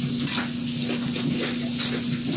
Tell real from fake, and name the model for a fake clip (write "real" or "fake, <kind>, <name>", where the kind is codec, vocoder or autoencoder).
real